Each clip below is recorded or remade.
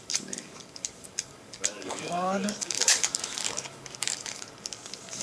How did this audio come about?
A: remade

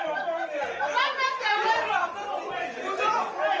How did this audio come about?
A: recorded